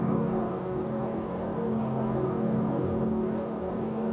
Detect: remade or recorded remade